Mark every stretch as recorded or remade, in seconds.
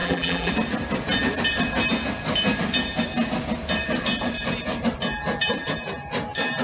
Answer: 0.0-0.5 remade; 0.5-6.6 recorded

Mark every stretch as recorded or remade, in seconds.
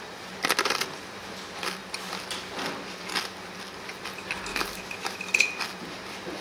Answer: 0.0-4.5 recorded; 4.5-5.2 remade; 5.2-6.4 recorded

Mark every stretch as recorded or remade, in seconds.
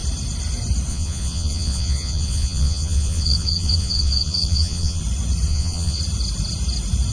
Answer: 0.0-0.9 recorded; 0.9-5.0 remade; 5.0-5.5 recorded; 5.5-6.0 remade; 6.0-7.1 recorded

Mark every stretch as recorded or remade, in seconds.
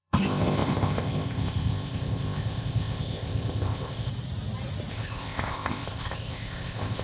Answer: 0.0-4.1 remade; 4.1-4.9 recorded; 4.9-7.0 remade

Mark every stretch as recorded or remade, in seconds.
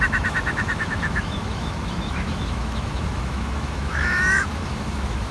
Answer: 0.0-5.3 remade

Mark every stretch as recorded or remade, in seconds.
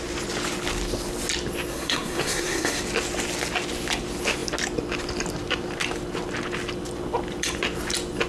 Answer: 0.0-1.7 recorded; 1.7-2.8 remade; 2.8-8.3 recorded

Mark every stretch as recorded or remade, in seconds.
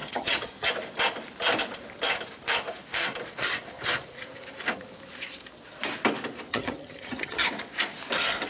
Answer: 0.0-0.7 remade; 0.7-6.5 recorded; 6.5-7.5 remade; 7.5-8.5 recorded